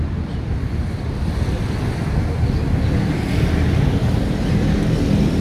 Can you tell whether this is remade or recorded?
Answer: recorded